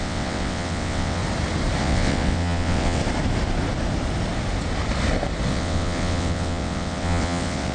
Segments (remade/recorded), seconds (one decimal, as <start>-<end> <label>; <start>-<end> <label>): 0.0-1.2 remade; 1.2-1.8 recorded; 1.8-3.0 remade; 3.0-5.5 recorded; 5.5-7.7 remade